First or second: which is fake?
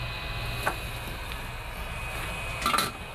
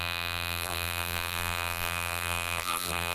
second